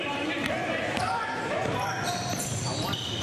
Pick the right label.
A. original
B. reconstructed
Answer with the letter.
B